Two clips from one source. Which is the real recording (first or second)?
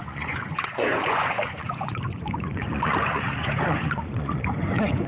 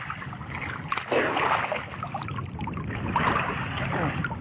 second